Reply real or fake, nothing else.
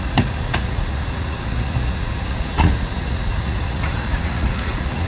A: fake